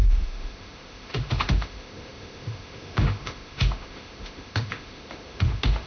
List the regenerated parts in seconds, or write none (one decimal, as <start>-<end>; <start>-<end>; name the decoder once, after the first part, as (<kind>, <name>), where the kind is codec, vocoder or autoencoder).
0.0-5.9 (autoencoder, DAC-VAE)